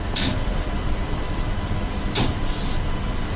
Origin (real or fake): real